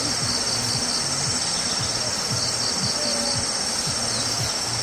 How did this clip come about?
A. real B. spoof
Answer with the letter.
A